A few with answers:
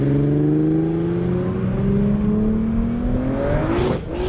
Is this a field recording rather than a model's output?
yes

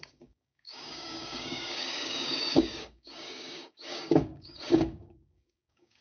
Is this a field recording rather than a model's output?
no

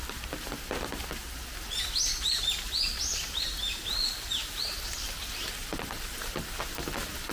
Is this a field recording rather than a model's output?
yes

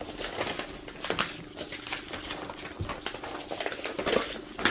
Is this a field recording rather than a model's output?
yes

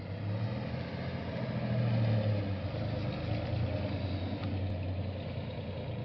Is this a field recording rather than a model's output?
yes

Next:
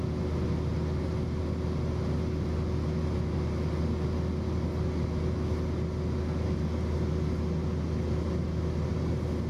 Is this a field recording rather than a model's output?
yes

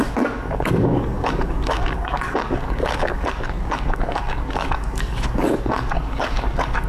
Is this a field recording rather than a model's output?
no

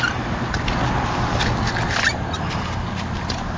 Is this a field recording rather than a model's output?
yes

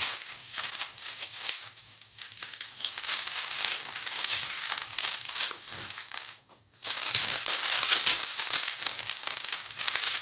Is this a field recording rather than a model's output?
no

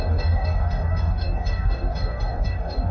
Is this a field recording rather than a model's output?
no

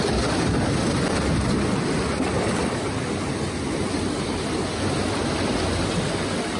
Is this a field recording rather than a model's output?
yes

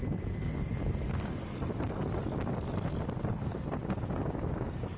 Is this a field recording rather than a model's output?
yes